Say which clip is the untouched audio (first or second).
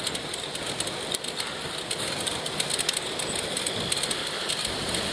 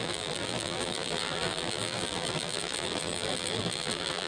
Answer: first